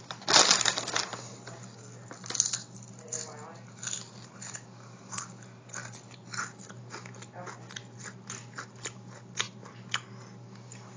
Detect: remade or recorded recorded